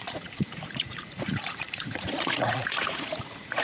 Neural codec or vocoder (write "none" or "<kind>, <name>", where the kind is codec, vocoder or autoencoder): vocoder, Vocos